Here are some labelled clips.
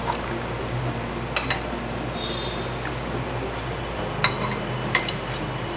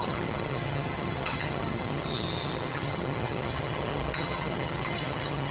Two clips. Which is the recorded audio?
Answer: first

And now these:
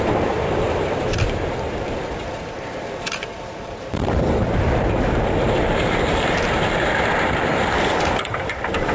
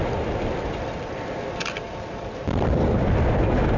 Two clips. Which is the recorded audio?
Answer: second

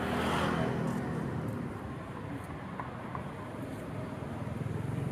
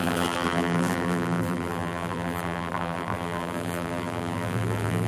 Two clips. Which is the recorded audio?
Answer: first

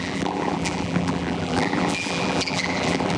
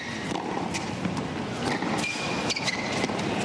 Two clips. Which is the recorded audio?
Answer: second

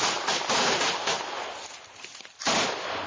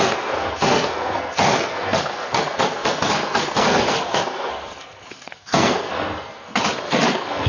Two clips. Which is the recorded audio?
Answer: first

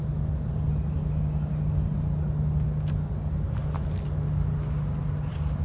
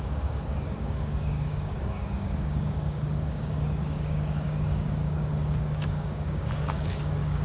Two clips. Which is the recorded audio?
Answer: first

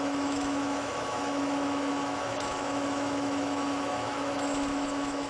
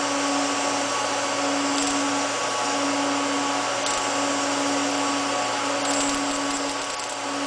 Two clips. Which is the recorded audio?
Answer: second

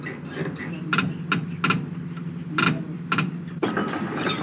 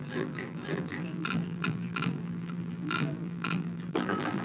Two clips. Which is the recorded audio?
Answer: first